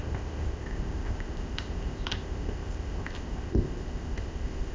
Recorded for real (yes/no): no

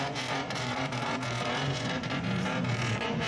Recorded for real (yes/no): no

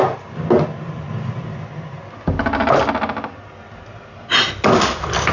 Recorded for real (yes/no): yes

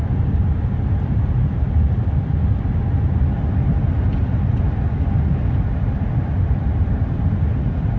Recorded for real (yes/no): yes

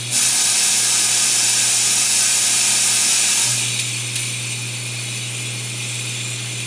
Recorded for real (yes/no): yes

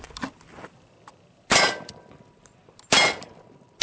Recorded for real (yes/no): yes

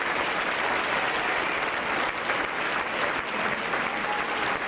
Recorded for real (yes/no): yes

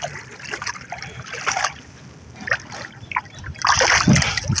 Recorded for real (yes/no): yes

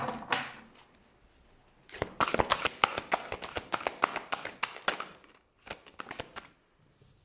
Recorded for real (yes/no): yes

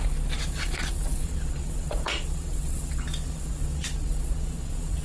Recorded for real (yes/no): no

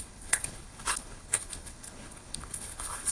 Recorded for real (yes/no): no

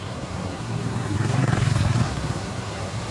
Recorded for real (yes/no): no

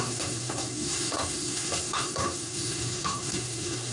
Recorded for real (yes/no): no